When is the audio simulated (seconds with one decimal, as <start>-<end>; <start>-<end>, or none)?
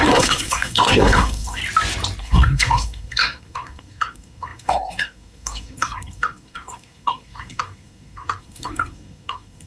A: 0.0-1.6; 2.2-9.7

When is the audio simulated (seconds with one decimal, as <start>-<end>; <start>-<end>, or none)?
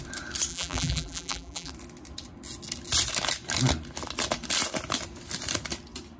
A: 0.5-1.7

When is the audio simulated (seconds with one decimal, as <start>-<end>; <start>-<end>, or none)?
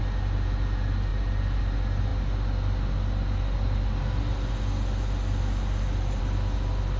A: 1.1-1.6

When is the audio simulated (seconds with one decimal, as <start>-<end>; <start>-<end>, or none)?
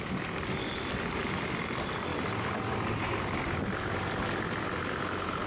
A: none